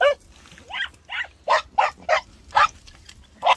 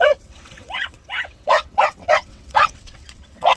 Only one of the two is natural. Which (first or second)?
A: first